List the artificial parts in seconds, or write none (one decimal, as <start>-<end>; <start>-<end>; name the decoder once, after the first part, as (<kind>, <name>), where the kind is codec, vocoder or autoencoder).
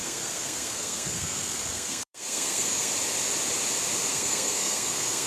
0.0-2.9 (codec, SNAC); 4.1-5.3